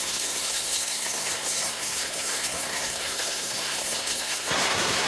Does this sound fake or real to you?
fake